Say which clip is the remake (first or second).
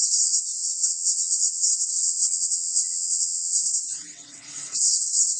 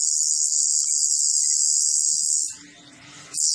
first